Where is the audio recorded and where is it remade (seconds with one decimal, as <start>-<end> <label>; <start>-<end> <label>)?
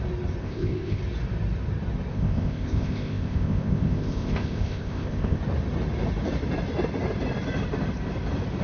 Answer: 0.0-0.4 recorded; 0.4-1.0 remade; 1.0-2.1 recorded; 2.1-5.4 remade; 5.4-8.6 recorded